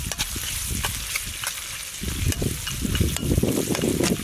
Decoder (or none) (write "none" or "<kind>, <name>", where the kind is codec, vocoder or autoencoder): none